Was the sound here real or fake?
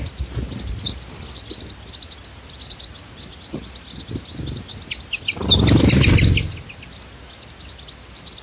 real